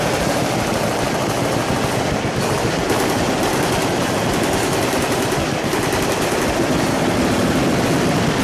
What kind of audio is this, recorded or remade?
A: recorded